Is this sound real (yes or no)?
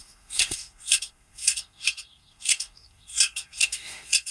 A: no